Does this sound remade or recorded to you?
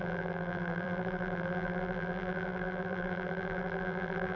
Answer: remade